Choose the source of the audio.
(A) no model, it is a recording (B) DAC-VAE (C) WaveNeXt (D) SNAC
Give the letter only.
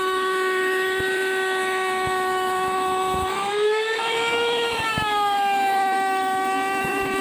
B